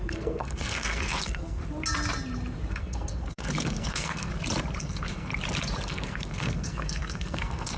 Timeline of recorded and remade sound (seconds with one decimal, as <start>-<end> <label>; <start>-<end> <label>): 0.0-1.6 remade; 1.6-2.7 recorded; 2.7-4.3 remade; 4.3-4.8 recorded; 4.8-5.3 remade; 5.3-5.9 recorded; 5.9-7.8 remade